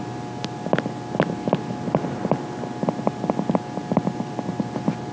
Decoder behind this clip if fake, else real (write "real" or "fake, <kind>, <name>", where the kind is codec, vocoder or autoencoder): real